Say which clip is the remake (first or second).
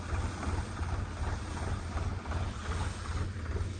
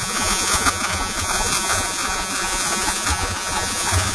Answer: second